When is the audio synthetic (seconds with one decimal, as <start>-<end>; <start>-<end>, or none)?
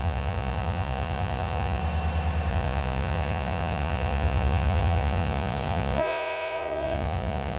0.0-1.8; 2.5-7.6